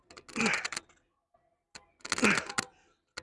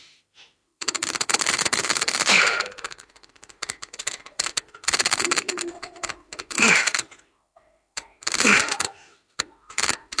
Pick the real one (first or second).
first